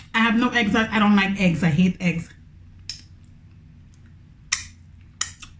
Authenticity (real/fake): real